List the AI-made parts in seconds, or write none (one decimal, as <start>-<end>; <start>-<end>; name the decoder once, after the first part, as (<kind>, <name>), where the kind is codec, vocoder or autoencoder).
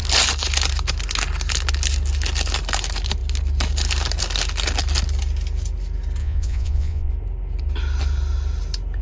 6.2-7.1 (vocoder, Vocos)